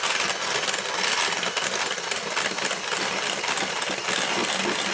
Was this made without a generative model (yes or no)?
yes